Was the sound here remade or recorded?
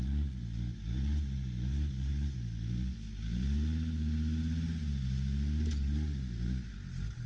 recorded